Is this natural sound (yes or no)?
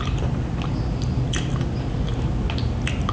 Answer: yes